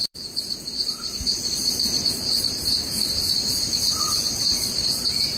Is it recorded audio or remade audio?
remade